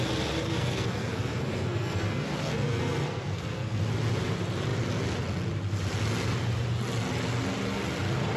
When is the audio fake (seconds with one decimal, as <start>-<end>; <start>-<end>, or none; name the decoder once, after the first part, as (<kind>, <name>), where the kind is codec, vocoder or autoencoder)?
0.4-3.8 (codec, SNAC)